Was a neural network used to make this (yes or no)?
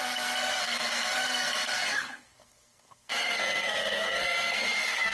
yes